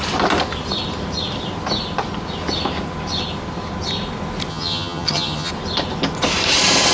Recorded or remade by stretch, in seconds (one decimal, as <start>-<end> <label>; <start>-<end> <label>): 0.0-4.5 recorded; 4.5-5.5 remade; 5.5-6.9 recorded